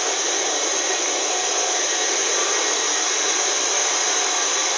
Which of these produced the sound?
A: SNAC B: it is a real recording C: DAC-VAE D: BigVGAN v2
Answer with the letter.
B